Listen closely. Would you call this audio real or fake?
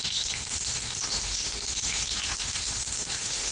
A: fake